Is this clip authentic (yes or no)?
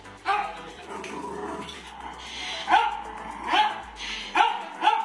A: yes